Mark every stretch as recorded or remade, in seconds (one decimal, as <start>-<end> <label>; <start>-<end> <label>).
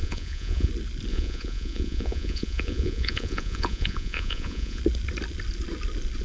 0.0-0.7 remade; 0.7-1.1 recorded; 1.1-4.8 remade; 4.8-6.2 recorded